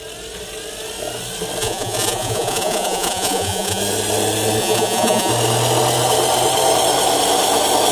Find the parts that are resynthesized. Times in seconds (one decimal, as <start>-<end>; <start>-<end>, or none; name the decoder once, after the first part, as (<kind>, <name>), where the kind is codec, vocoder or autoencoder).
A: 1.6-3.8 (vocoder, Vocos); 4.6-5.3